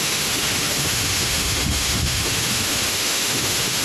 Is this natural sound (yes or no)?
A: no